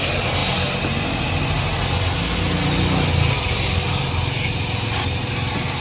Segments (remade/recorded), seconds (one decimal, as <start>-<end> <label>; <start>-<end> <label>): 0.0-5.8 recorded

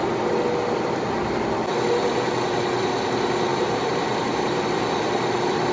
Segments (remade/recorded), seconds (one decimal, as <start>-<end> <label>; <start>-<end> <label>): 0.0-3.5 recorded; 3.5-4.6 remade; 4.6-5.7 recorded